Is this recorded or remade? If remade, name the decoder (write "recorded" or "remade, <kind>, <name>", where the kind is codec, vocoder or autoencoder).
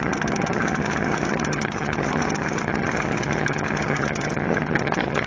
remade, vocoder, HiFi-GAN